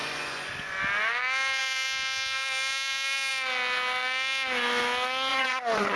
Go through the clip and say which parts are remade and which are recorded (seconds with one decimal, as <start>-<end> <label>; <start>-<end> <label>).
0.0-0.8 remade; 0.8-5.3 recorded; 5.3-6.0 remade